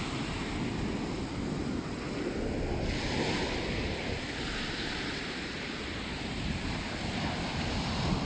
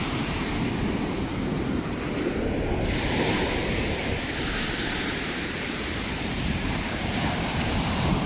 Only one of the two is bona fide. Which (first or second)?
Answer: first